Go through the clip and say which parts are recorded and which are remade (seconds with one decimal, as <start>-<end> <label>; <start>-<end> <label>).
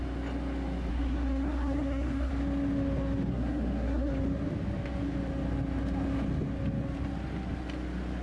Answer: 0.0-0.9 recorded; 0.9-2.3 remade; 2.3-3.3 recorded; 3.3-4.1 remade; 4.1-8.2 recorded